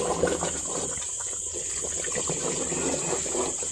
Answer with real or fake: real